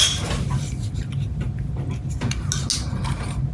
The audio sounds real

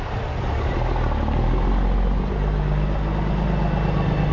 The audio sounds real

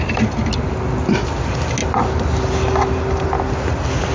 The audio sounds real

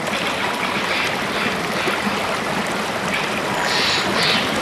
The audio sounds real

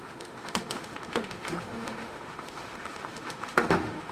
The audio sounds fake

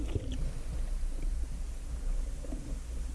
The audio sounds real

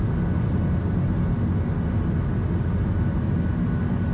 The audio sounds real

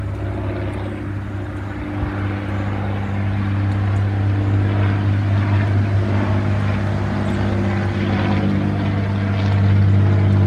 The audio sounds real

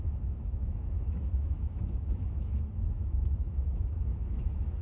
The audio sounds fake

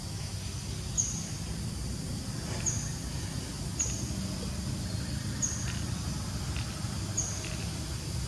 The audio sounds real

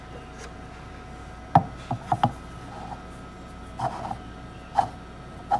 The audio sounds real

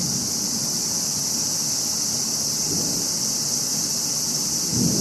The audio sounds real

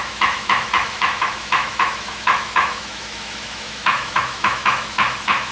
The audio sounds fake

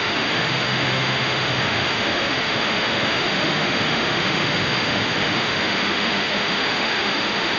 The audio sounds fake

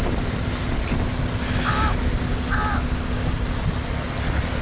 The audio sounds real